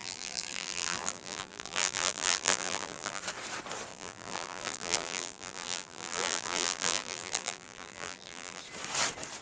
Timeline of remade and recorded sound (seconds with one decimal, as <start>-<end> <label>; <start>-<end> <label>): 0.0-3.2 remade; 3.2-3.9 recorded; 3.9-8.6 remade; 8.6-9.4 recorded